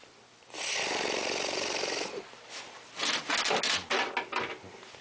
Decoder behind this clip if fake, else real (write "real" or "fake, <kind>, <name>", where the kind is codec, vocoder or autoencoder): real